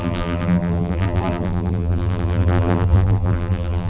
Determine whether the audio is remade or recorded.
remade